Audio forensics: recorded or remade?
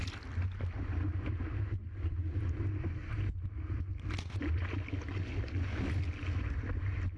recorded